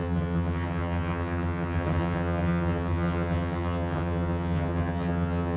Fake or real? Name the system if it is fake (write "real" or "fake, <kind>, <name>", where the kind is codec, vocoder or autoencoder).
fake, vocoder, HiFi-GAN